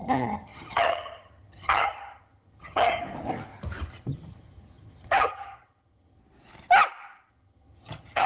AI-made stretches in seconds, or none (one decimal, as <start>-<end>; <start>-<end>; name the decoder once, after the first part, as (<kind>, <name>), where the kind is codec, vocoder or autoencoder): 0.0-3.0 (vocoder, HiFi-GAN); 3.9-6.2; 7.3-8.3

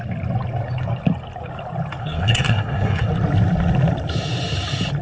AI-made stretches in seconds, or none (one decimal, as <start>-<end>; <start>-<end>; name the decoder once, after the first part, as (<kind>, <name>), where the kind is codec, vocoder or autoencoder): 2.0-3.1 (codec, SNAC)

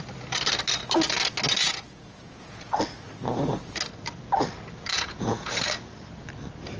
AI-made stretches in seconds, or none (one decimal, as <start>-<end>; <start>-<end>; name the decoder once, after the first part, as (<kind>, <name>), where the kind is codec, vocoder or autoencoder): 1.6-2.8 (vocoder, Vocos); 4.9-5.5

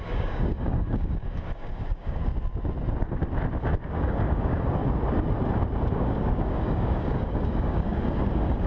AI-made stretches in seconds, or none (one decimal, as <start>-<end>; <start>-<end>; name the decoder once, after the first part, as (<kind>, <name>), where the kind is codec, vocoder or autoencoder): 0.0-2.2 (codec, DAC); 3.6-4.8; 5.9-8.7

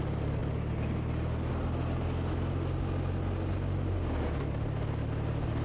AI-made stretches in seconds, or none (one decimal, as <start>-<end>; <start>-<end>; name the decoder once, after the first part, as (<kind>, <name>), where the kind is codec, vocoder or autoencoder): 0.4-1.5 (vocoder, BigVGAN v2)

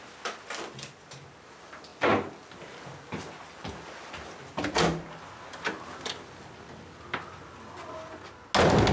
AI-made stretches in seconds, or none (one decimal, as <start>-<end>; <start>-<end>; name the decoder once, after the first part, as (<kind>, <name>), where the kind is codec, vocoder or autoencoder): none

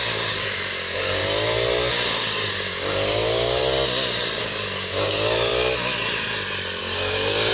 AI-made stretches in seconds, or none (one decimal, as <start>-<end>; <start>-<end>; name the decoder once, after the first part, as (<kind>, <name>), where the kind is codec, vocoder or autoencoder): 0.0-1.2 (codec, DAC); 1.9-3.6; 4.4-5.5; 6.8-7.5

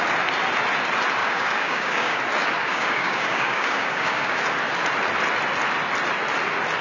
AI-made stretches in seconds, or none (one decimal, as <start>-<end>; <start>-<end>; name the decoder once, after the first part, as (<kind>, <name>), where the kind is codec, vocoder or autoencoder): 1.2-2.2 (codec, DAC); 2.6-4.4